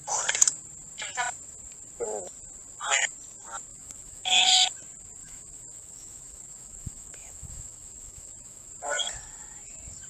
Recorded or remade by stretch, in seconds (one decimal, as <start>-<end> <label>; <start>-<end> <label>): 0.0-3.7 recorded; 3.7-4.5 remade; 4.5-5.2 recorded; 5.2-8.7 remade; 8.7-10.1 recorded